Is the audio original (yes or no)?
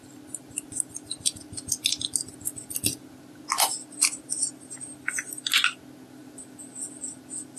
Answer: yes